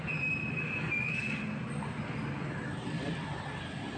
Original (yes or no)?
yes